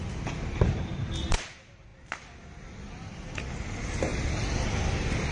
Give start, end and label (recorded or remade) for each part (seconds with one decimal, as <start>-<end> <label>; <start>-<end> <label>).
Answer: 0.0-5.3 recorded